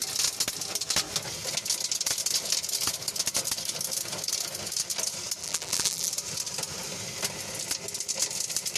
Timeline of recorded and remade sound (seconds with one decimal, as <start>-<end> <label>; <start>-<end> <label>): 0.0-5.4 recorded; 5.4-6.1 remade; 6.1-8.8 recorded